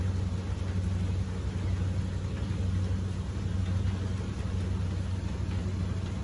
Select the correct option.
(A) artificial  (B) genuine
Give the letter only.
B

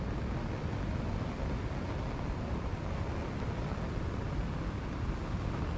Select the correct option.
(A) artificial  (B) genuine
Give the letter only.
B